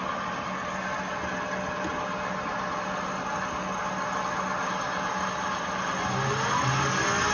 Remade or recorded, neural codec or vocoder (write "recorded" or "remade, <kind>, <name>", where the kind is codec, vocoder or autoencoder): recorded